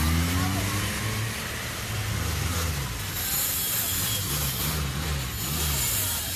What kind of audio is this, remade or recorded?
recorded